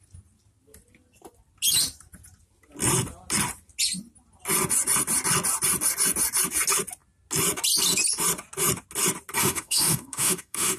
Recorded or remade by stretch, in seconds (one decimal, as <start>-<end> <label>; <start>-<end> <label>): 0.0-9.4 recorded; 9.4-10.8 remade

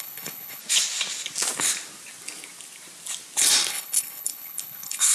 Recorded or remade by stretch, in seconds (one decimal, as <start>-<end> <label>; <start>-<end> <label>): 0.0-0.6 remade; 0.6-3.7 recorded; 3.7-5.1 remade

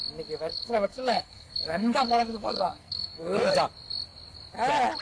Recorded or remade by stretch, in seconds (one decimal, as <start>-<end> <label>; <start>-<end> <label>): 0.0-0.5 recorded; 0.5-3.5 remade; 3.5-5.0 recorded

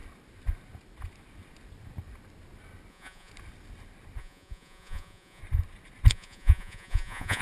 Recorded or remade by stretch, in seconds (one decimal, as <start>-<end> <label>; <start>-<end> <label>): 0.0-2.9 recorded; 2.9-3.3 remade; 3.3-4.2 recorded; 4.2-5.4 remade; 5.4-6.1 recorded; 6.1-7.4 remade